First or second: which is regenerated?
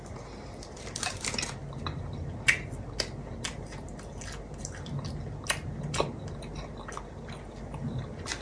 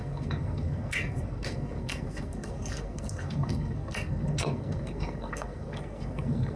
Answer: second